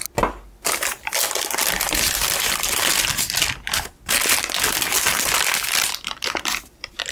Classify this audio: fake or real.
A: real